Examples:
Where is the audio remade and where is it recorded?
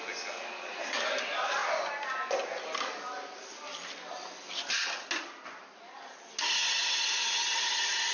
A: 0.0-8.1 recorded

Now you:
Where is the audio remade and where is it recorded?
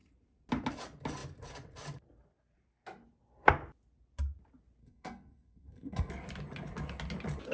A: 0.0-4.8 recorded; 4.8-6.1 remade; 6.1-7.5 recorded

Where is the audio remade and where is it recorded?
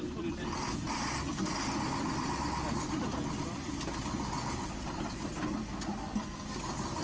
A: 0.0-6.0 recorded; 6.0-6.6 remade; 6.6-7.0 recorded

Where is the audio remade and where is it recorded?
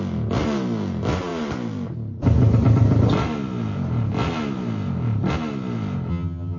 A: 0.0-6.1 recorded; 6.1-6.6 remade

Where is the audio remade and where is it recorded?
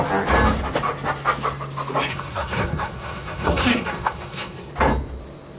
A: 0.0-2.1 recorded; 2.1-4.7 remade; 4.7-5.6 recorded